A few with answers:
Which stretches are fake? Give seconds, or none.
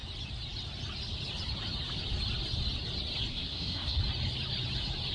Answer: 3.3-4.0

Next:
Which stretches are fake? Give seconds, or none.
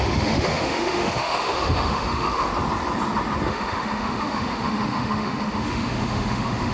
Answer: 0.0-2.5; 3.5-6.7